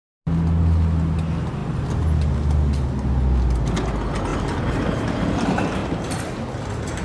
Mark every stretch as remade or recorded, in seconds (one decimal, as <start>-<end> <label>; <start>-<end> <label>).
0.0-4.3 recorded; 4.3-5.3 remade; 5.3-5.8 recorded; 5.8-6.4 remade; 6.4-7.0 recorded